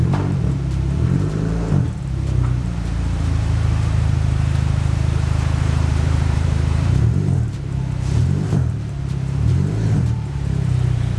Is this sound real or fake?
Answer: fake